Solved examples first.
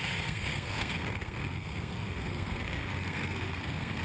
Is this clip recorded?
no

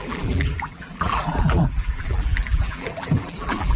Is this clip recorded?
no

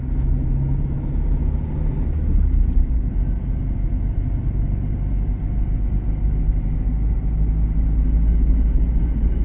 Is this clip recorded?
yes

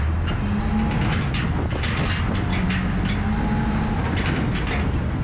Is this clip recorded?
yes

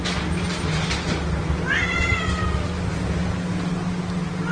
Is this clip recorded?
yes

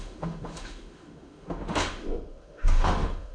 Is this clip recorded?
no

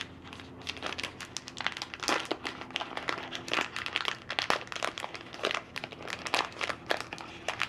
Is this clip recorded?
yes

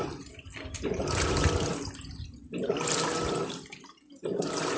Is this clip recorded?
yes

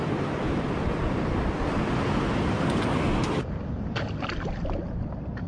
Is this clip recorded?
yes